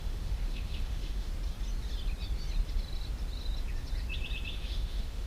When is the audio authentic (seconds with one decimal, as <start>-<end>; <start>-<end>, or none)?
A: 1.3-4.5